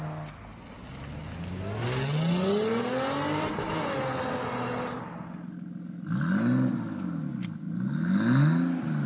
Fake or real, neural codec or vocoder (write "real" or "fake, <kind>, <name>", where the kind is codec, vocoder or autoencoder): real